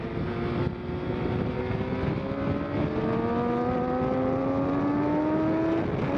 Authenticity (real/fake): real